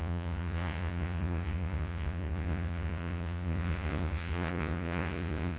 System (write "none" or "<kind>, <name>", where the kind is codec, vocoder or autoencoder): vocoder, Vocos